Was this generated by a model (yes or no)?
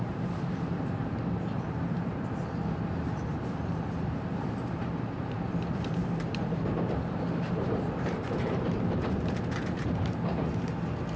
yes